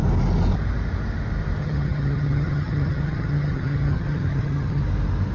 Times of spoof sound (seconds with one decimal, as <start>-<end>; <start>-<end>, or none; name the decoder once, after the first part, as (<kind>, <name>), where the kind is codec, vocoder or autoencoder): 1.6-4.8 (vocoder, HiFi-GAN)